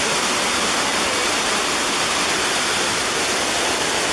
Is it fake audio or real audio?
real